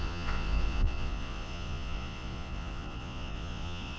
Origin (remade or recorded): remade